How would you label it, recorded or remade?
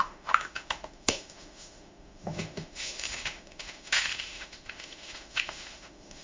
remade